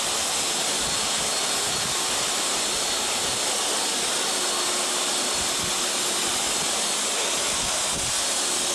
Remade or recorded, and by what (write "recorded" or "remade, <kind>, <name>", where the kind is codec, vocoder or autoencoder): recorded